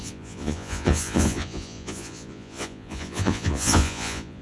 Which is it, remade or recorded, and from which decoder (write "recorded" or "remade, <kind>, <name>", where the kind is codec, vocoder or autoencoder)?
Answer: remade, vocoder, Vocos